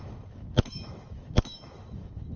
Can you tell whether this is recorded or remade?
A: remade